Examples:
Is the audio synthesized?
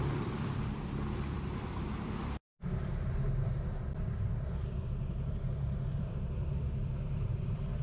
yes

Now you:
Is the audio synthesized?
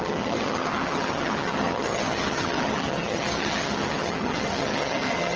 yes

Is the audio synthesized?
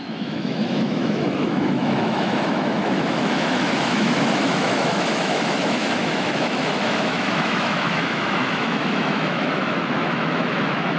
yes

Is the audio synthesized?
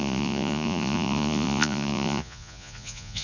yes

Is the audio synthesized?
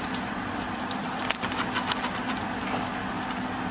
no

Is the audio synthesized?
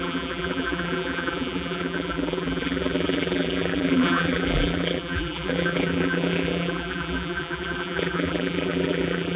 yes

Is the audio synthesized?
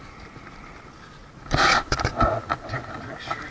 no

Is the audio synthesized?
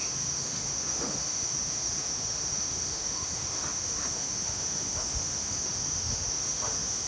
yes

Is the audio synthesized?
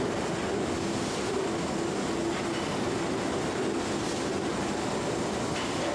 no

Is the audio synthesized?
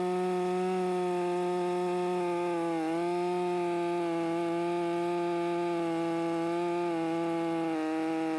no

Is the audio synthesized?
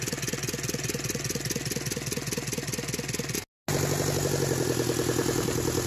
no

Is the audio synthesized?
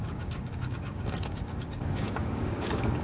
yes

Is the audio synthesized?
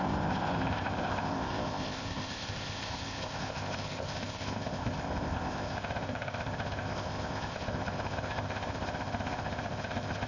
yes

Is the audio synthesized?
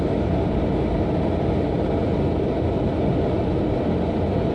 no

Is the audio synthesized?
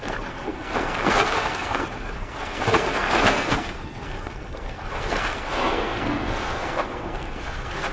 yes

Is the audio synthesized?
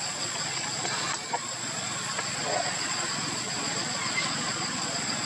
yes